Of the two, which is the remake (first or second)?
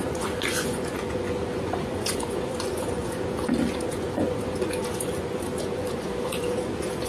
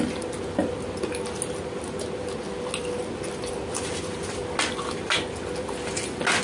first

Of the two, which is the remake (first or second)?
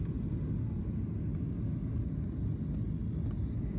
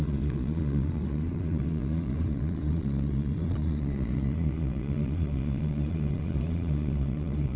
second